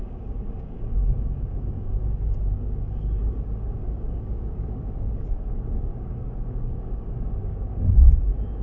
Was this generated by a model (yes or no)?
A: yes